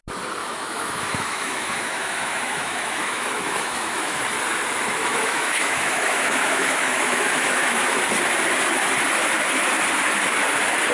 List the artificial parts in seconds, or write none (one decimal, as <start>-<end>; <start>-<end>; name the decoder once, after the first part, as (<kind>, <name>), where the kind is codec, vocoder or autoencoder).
0.4-4.2 (autoencoder, DAC-VAE); 5.0-8.0